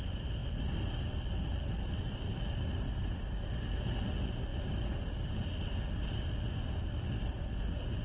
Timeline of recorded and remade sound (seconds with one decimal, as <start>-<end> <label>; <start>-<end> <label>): 0.0-8.0 recorded